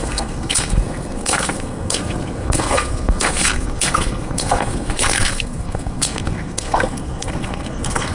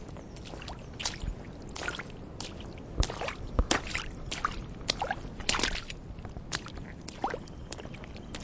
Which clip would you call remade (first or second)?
first